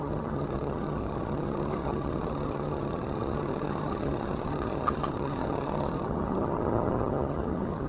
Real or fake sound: fake